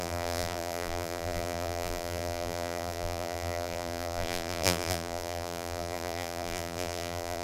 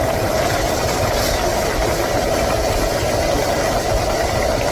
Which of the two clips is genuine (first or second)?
second